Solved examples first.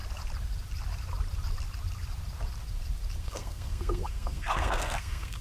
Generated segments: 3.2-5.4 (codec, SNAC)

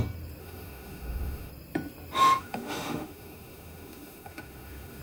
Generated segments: 0.4-1.5 (autoencoder, DAC-VAE); 2.2-5.0

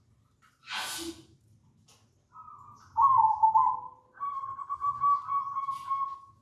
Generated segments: none

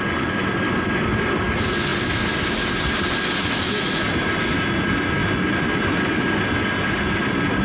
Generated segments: none

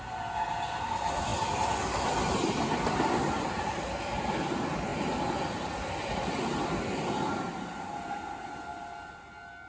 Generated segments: none

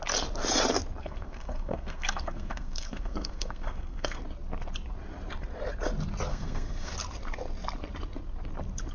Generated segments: 1.0-4.2 (codec, SNAC); 6.3-6.9